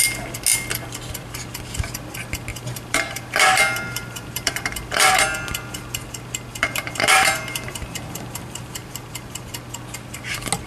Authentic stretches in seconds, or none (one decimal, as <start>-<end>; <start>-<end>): 0.0-2.5; 5.1-6.5; 9.5-10.7